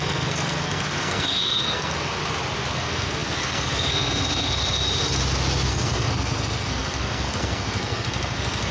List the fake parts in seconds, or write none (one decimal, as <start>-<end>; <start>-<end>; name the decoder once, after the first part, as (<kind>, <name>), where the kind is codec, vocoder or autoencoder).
0.0-2.2 (codec, SNAC); 2.7-4.8; 5.7-8.7

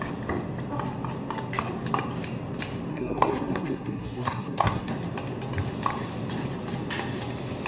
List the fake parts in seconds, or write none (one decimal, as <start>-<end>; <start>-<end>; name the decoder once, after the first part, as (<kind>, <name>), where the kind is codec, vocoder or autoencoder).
2.9-4.9 (codec, SNAC)

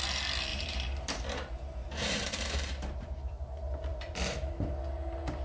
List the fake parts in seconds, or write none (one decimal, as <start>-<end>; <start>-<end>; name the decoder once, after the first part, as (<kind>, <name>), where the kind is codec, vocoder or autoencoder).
0.5-3.3 (vocoder, BigVGAN v2); 3.9-4.5

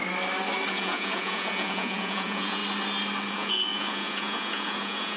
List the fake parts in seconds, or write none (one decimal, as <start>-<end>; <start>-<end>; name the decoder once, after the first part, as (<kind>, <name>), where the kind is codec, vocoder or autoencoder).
0.7-2.6 (vocoder, Vocos); 3.3-5.2